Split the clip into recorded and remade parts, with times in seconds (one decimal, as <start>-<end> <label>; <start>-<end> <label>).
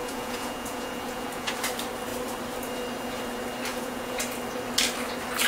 0.0-1.5 remade; 1.5-3.7 recorded; 3.7-4.2 remade; 4.2-5.5 recorded